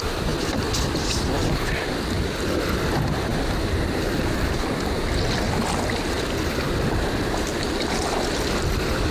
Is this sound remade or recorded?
recorded